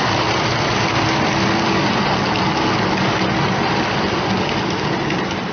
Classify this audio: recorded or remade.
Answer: recorded